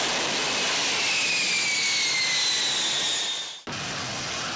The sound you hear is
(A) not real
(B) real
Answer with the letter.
B